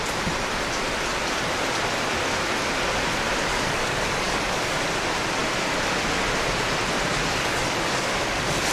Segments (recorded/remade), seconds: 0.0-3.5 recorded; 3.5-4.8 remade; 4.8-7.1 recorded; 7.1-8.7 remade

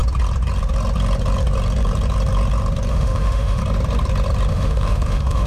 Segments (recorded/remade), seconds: 0.0-2.9 recorded; 2.9-3.6 remade; 3.6-4.5 recorded; 4.5-5.5 remade

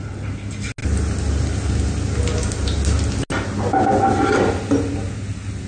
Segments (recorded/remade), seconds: 0.0-5.7 recorded

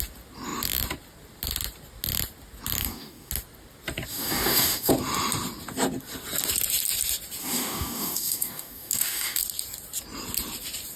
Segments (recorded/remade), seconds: 0.0-2.8 recorded; 2.8-3.3 remade; 3.3-4.1 recorded; 4.1-4.9 remade; 4.9-7.4 recorded; 7.4-9.4 remade; 9.4-11.0 recorded

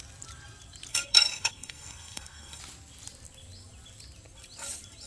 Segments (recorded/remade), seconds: 0.0-0.9 recorded; 0.9-2.6 remade; 2.6-5.1 recorded

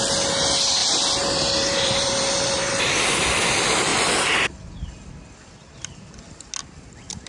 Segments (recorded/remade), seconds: 0.0-0.8 recorded; 0.8-2.7 remade; 2.7-7.3 recorded

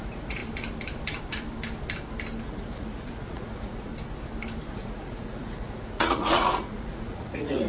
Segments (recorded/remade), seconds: 0.0-0.4 remade; 0.4-2.4 recorded; 2.4-3.9 remade; 3.9-4.7 recorded; 4.7-7.7 remade